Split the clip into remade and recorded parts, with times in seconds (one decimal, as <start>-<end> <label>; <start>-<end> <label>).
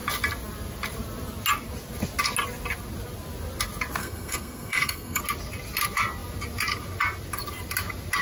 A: 0.0-4.0 recorded; 4.0-5.2 remade; 5.2-8.2 recorded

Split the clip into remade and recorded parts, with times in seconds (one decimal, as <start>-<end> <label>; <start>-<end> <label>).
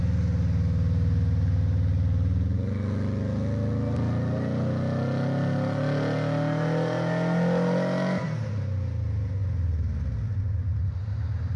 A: 0.0-11.6 recorded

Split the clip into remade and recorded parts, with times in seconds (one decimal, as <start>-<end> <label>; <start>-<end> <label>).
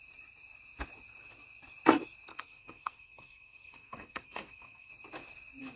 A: 0.0-2.3 recorded; 2.3-4.9 remade; 4.9-5.8 recorded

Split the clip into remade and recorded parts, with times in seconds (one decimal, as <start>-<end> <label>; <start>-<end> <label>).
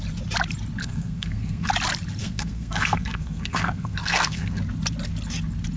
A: 0.0-0.8 recorded; 0.8-1.7 remade; 1.7-2.2 recorded; 2.2-4.6 remade; 4.6-5.8 recorded